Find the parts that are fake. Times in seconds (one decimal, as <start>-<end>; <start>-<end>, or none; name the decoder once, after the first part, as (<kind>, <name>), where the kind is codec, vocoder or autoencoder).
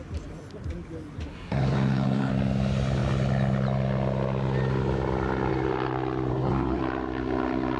1.3-2.3 (codec, SNAC); 6.3-6.8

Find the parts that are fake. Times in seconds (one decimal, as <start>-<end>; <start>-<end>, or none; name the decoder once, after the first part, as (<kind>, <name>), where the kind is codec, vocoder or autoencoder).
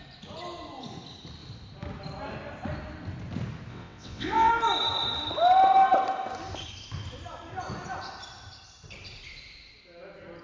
3.7-4.5 (vocoder, WaveNeXt)